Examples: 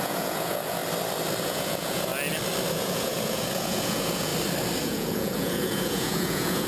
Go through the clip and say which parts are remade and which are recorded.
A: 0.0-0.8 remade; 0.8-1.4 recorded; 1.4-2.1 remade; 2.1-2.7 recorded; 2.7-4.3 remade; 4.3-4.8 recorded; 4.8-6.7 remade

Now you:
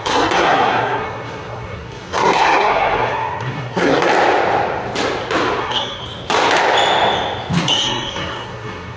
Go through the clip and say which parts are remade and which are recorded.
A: 0.0-4.1 remade; 4.1-5.6 recorded; 5.6-6.0 remade; 6.0-7.6 recorded; 7.6-9.0 remade

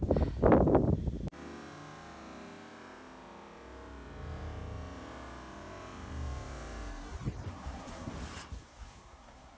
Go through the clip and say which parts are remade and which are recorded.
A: 0.0-7.5 recorded; 7.5-8.1 remade; 8.1-8.6 recorded; 8.6-9.6 remade

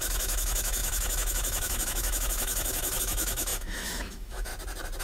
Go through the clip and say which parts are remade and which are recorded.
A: 0.0-4.5 remade; 4.5-5.0 recorded

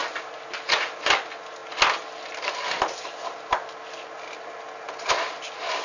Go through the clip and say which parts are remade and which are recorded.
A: 0.0-5.8 recorded

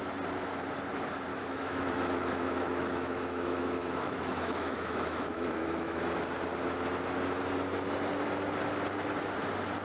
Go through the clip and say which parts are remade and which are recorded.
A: 0.0-1.3 recorded; 1.3-6.0 remade; 6.0-9.8 recorded

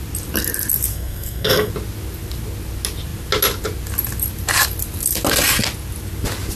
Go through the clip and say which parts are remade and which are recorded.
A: 0.0-0.9 recorded; 0.9-1.7 remade; 1.7-6.6 recorded